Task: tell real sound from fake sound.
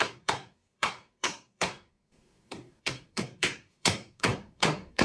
fake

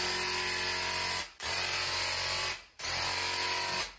real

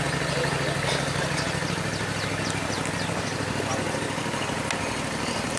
real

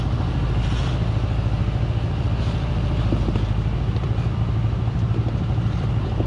real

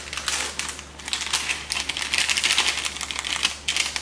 real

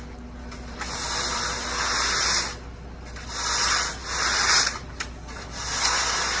real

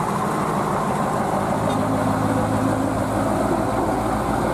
real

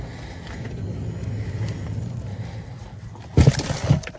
real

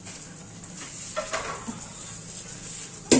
real